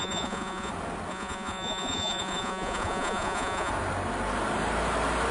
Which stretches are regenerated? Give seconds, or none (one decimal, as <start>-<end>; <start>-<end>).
0.0-0.7; 1.1-3.7